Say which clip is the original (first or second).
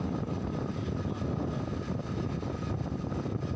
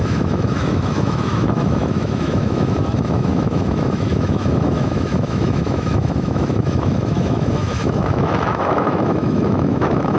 first